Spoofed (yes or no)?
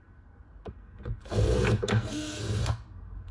yes